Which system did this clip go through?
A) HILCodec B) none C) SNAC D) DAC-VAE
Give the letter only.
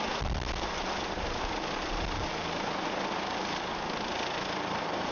B